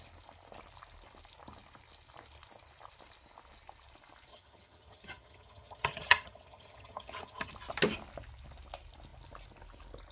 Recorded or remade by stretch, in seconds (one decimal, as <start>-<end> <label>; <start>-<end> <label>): 0.0-4.3 recorded; 4.3-7.5 remade; 7.5-10.1 recorded